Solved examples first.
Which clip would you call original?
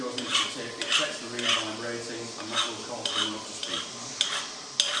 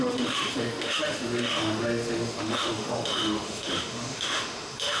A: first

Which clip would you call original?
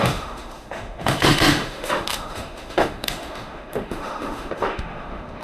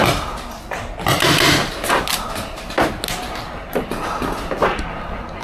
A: second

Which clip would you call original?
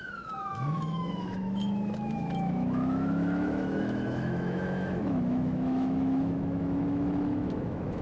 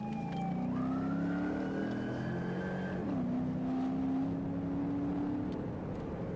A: second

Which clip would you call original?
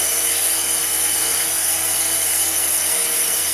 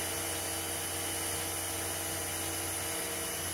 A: second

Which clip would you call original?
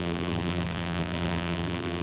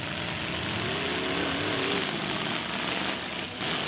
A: second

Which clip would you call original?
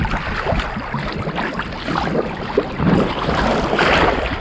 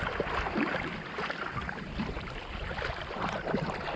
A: first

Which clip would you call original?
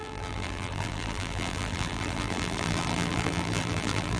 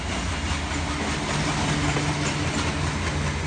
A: second